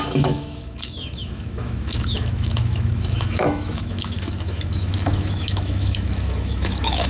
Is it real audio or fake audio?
fake